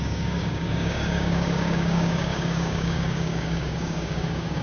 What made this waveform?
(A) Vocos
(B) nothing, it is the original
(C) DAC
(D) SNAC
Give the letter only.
C